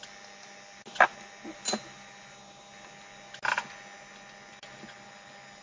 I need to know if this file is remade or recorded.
recorded